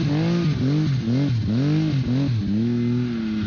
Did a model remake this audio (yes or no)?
no